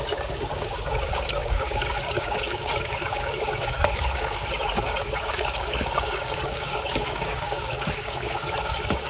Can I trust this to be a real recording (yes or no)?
no